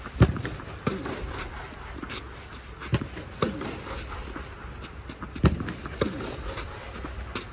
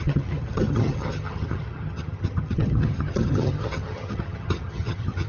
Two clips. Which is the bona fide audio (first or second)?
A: first